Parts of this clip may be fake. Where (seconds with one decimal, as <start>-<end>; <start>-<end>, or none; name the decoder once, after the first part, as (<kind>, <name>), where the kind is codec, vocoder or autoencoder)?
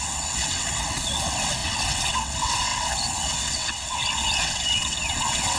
0.0-5.6 (vocoder, WaveNeXt)